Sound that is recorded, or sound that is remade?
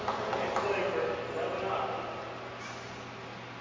recorded